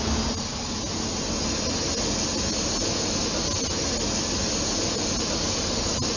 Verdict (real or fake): real